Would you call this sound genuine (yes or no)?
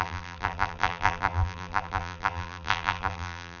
no